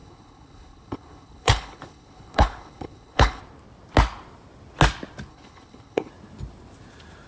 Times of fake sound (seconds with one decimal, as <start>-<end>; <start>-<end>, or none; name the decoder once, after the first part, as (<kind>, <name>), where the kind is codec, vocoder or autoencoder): 0.0-3.4 (codec, HILCodec); 5.3-6.1